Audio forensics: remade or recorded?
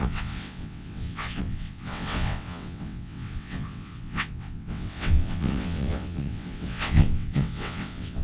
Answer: remade